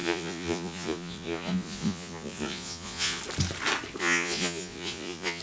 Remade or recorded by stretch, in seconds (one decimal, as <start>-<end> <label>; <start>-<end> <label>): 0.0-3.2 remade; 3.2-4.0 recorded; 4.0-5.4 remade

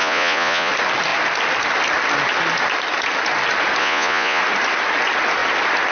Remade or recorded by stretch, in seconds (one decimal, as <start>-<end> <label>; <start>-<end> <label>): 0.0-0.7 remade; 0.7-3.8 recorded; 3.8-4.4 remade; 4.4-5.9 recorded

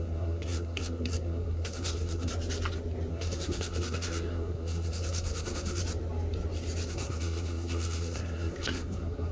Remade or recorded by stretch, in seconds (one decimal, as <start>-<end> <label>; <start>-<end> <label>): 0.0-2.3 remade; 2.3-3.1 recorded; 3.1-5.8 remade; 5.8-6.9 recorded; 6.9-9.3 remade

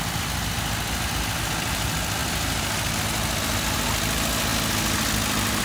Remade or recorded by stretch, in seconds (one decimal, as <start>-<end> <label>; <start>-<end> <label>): 0.0-5.6 recorded

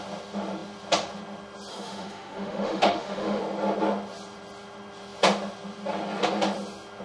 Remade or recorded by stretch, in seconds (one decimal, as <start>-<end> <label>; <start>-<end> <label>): 0.0-1.7 recorded; 1.7-3.4 remade; 3.4-7.0 recorded

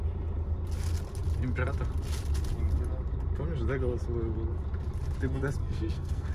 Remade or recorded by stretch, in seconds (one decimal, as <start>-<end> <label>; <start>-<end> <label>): 0.0-5.6 recorded; 5.6-6.3 remade

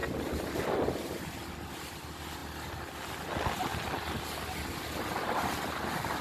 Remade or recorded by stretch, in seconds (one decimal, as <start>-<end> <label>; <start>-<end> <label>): 0.0-6.2 recorded